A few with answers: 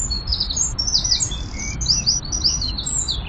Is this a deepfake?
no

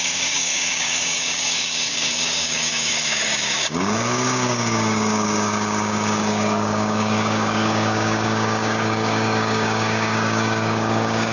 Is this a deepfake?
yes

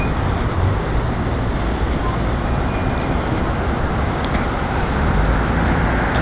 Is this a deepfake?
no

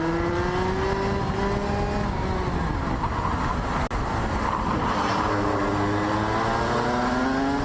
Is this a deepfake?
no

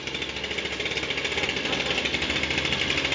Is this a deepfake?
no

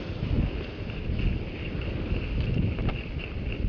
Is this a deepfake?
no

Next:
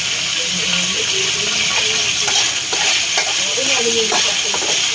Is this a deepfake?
no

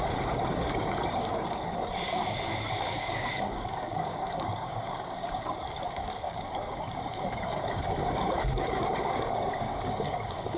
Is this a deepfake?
yes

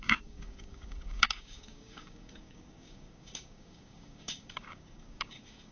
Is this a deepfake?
yes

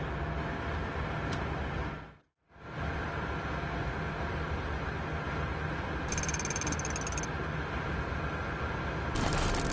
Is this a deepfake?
no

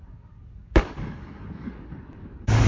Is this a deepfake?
yes